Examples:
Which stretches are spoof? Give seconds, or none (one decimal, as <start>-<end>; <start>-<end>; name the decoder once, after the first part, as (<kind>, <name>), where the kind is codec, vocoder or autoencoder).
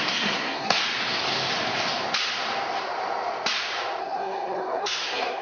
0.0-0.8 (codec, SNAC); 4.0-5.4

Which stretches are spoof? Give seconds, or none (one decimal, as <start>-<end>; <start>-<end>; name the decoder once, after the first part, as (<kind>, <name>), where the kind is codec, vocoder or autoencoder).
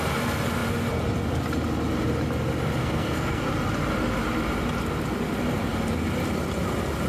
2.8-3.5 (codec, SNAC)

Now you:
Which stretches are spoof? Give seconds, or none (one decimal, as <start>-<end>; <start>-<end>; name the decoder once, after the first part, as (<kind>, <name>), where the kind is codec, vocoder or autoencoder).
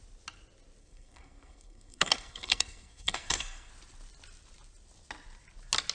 0.8-3.7 (codec, SNAC)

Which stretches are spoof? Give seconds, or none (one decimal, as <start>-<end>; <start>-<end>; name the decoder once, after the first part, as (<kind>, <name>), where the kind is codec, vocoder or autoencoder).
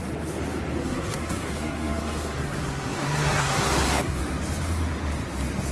0.8-4.2 (codec, SNAC)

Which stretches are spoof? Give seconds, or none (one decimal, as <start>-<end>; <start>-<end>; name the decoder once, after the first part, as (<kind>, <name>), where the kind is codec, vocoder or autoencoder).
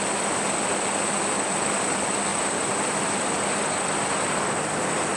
none